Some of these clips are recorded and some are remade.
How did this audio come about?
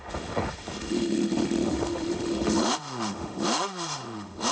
remade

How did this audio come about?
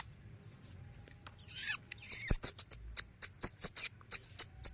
recorded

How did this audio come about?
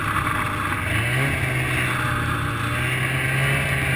recorded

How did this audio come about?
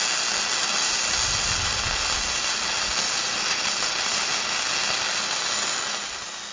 recorded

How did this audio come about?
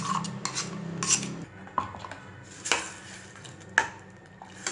recorded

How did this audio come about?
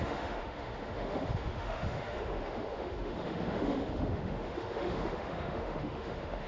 remade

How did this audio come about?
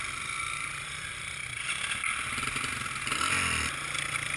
recorded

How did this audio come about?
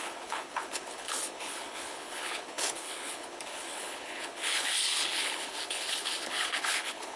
remade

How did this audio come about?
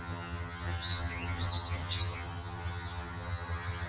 remade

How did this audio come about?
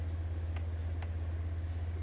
recorded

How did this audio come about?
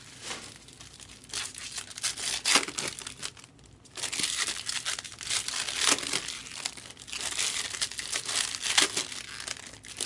recorded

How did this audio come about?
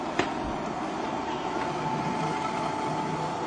recorded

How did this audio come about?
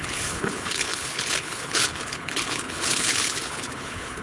remade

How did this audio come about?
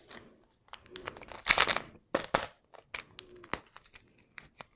recorded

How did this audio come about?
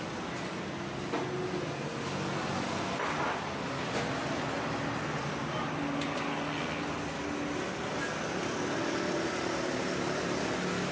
recorded